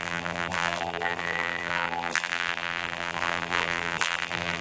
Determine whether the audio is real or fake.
fake